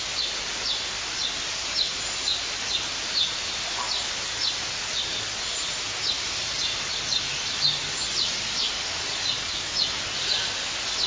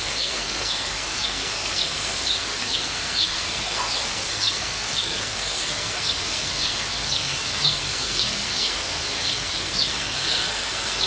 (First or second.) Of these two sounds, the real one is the first